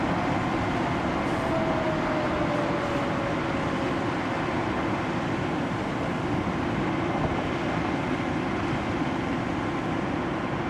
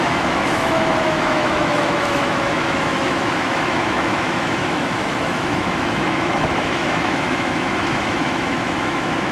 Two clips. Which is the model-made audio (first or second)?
second